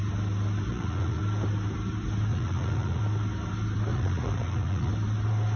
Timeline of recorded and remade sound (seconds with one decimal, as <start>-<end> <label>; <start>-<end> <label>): 0.0-0.7 recorded; 0.7-1.2 remade; 1.2-2.3 recorded; 2.3-3.0 remade; 3.0-3.9 recorded; 3.9-4.9 remade; 4.9-5.6 recorded